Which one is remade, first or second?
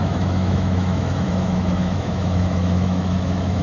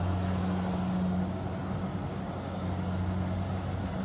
first